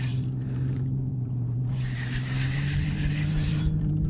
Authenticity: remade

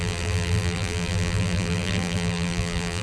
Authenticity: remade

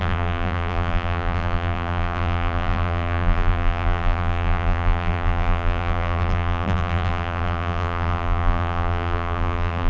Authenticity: remade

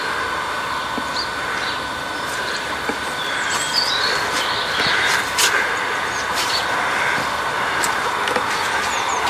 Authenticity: recorded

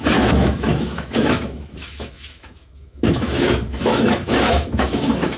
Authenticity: remade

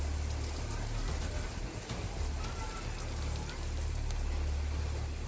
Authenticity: recorded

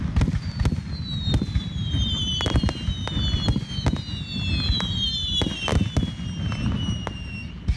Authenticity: recorded